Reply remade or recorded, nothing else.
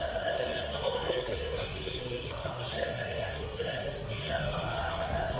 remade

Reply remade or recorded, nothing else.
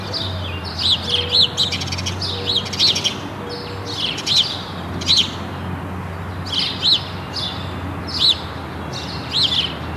recorded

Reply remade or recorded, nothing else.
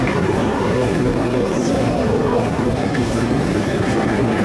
remade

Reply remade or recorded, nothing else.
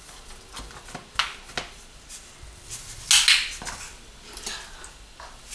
recorded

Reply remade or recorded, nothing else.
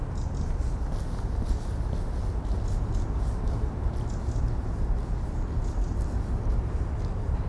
recorded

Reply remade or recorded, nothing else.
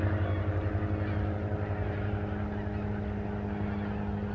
recorded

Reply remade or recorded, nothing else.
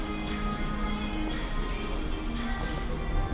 recorded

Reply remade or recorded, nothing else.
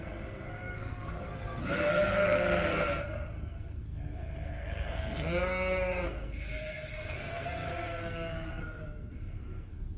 remade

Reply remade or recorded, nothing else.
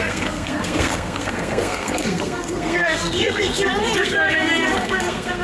remade